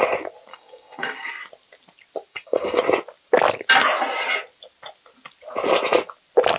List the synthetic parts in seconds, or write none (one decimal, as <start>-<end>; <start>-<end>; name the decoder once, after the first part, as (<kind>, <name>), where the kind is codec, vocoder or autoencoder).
0.5-1.3 (codec, DAC); 2.3-2.8